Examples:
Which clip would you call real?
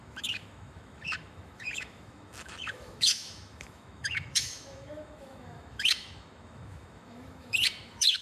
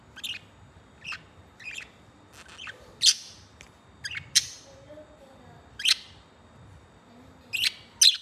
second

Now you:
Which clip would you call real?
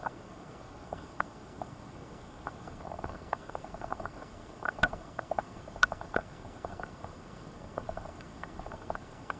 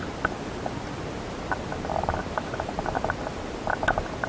second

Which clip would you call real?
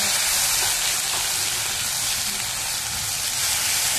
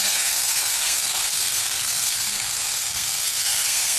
first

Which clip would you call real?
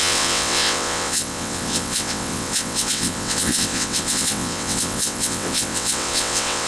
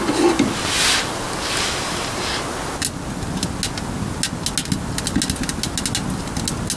second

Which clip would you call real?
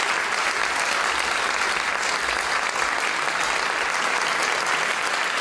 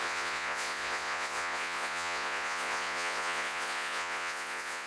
first